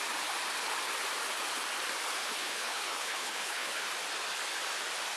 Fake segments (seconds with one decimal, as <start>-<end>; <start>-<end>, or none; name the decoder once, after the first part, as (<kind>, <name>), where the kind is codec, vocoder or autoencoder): 2.2-3.9 (codec, HILCodec)